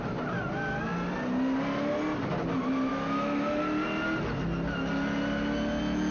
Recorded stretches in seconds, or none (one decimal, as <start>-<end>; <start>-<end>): 0.0-2.9; 3.6-6.1